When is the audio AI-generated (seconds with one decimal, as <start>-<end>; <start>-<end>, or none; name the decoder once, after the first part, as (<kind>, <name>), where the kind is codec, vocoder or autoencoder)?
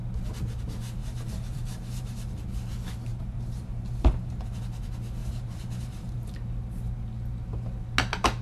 1.0-2.4 (vocoder, BigVGAN v2); 3.1-4.6; 5.2-6.3